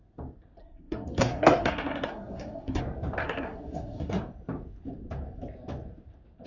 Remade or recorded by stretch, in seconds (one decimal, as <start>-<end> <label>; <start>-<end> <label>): 0.0-0.6 recorded; 0.6-2.8 remade; 2.8-3.2 recorded; 3.2-4.2 remade; 4.2-6.5 recorded

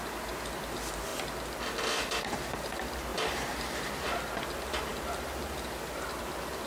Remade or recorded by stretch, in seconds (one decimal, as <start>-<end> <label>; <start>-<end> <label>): 0.0-6.7 remade

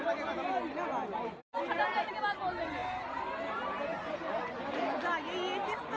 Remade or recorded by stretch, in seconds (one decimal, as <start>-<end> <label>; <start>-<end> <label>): 0.0-1.5 recorded; 1.5-2.1 remade; 2.1-2.8 recorded; 2.8-4.6 remade; 4.6-6.0 recorded

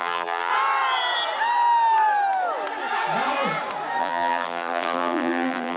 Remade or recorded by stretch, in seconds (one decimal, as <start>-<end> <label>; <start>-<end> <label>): 0.0-0.5 remade; 0.5-4.0 recorded; 4.0-5.8 remade

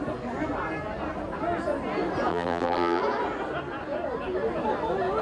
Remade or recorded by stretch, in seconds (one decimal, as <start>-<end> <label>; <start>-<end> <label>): 0.0-2.3 recorded; 2.3-3.0 remade; 3.0-5.2 recorded

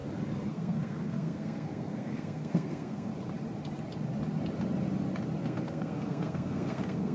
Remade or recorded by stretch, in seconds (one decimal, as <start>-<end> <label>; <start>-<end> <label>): 0.0-0.5 recorded; 0.5-3.1 remade; 3.1-5.4 recorded; 5.4-7.1 remade

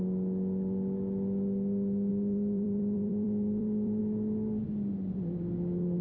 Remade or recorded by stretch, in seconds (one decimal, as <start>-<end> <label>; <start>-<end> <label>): 0.0-2.1 recorded; 2.1-4.0 remade; 4.0-6.0 recorded

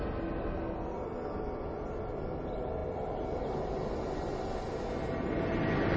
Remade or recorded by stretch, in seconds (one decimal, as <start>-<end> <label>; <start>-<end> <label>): 0.0-6.0 recorded